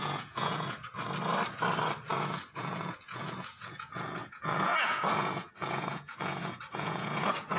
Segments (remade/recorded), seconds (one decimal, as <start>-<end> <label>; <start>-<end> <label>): 0.0-0.9 remade; 0.9-2.1 recorded; 2.1-7.6 remade